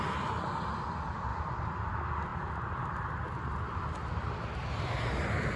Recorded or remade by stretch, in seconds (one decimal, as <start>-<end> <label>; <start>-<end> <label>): 0.0-1.3 recorded; 1.3-1.9 remade; 1.9-5.6 recorded

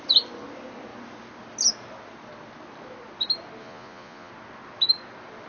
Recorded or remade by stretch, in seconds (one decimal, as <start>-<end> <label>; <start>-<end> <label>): 0.0-3.6 recorded; 3.6-4.3 remade; 4.3-5.5 recorded

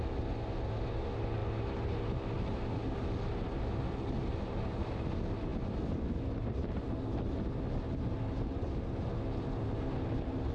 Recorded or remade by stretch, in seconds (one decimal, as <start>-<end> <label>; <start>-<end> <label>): 0.0-10.5 recorded

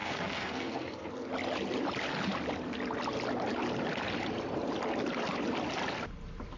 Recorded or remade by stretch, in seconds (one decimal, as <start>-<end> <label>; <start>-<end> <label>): 0.0-1.3 remade; 1.3-6.6 recorded

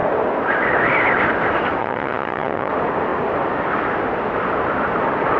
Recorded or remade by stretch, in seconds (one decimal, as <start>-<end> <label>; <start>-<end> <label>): 0.0-1.8 recorded; 1.8-2.7 remade; 2.7-5.4 recorded

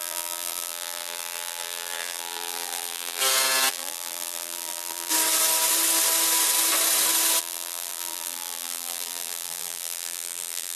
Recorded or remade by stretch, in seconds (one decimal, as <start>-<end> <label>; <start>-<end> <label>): 0.0-3.2 remade; 3.2-3.7 recorded; 3.7-5.1 remade; 5.1-7.4 recorded; 7.4-10.8 remade

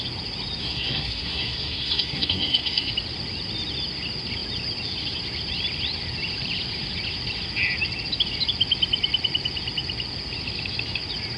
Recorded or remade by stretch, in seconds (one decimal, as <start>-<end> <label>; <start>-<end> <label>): 0.0-0.6 recorded; 0.6-2.9 remade; 2.9-11.4 recorded

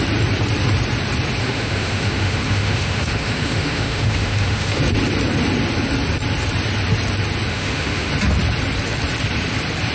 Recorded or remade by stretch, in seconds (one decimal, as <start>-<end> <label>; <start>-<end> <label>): 0.0-1.4 recorded; 1.4-4.8 remade; 4.8-7.5 recorded; 7.5-8.1 remade; 8.1-9.9 recorded